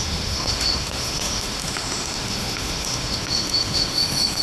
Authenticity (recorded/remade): remade